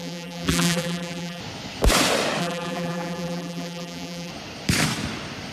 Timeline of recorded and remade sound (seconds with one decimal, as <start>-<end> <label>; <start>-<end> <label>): 0.0-1.4 remade; 1.4-2.4 recorded; 2.4-4.3 remade; 4.3-5.5 recorded